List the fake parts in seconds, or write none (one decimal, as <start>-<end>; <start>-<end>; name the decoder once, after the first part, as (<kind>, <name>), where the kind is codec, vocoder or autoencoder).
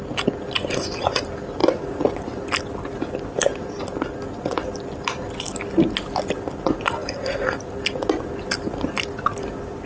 none